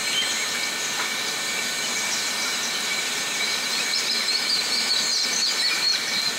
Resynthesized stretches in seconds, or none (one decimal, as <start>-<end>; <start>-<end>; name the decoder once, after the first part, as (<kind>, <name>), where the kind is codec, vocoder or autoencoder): 1.1-4.9 (vocoder, BigVGAN v2); 5.9-6.4